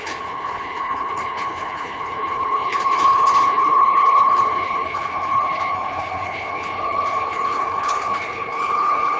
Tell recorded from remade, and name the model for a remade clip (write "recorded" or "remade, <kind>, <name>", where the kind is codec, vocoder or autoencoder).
remade, codec, HILCodec